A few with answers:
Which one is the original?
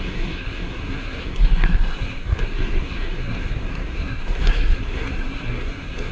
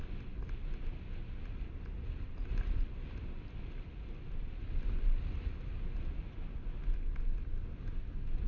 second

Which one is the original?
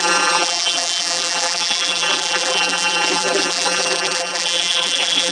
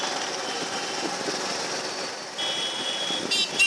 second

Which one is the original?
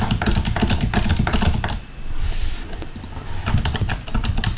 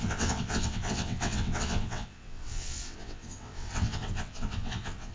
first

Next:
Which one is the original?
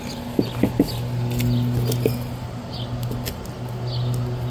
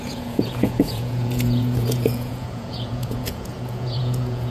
first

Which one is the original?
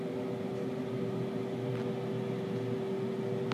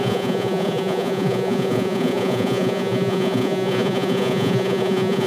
first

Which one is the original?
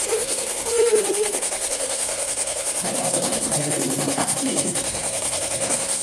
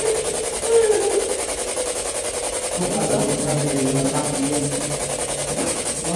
second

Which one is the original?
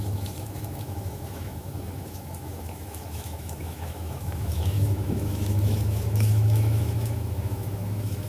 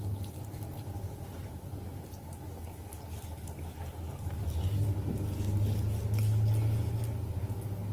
second